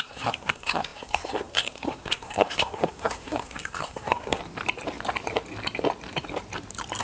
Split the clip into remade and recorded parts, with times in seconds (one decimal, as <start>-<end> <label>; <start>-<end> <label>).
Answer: 0.0-4.4 remade; 4.4-7.0 recorded